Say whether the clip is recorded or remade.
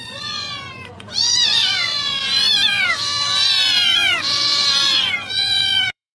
remade